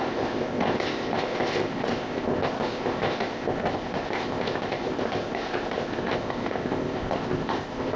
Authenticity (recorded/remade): remade